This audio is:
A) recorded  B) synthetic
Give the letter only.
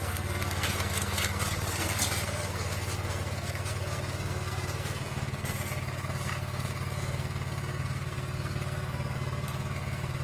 B